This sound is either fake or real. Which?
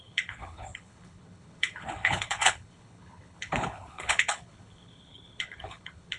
fake